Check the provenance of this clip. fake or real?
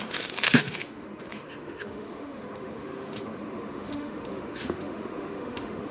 fake